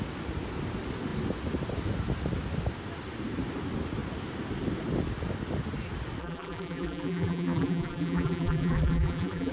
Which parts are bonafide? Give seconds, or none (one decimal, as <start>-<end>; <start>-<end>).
0.0-6.2